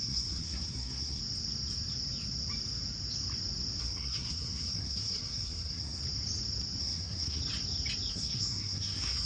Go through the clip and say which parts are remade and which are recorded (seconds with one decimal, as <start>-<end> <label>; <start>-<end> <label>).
0.0-1.2 remade; 1.2-3.8 recorded; 3.8-6.0 remade; 6.0-6.8 recorded; 6.8-7.4 remade; 7.4-8.1 recorded; 8.1-9.3 remade